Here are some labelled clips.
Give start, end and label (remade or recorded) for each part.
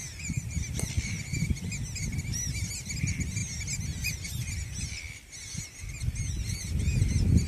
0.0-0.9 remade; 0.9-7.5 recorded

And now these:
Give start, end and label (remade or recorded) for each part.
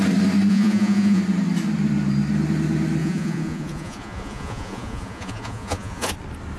0.0-0.5 recorded; 0.5-1.2 remade; 1.2-3.0 recorded; 3.0-6.1 remade; 6.1-6.6 recorded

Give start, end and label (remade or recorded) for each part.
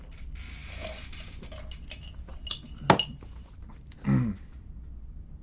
0.0-5.4 recorded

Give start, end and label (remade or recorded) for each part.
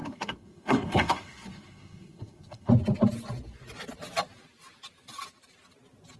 0.0-2.7 remade; 2.7-6.2 recorded